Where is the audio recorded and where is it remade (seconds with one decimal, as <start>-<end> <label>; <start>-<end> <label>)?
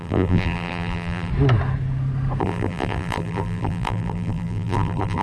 0.0-1.3 remade; 1.3-2.4 recorded; 2.4-5.2 remade